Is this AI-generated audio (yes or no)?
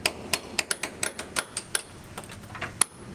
no